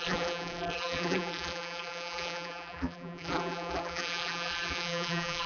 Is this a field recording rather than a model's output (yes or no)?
no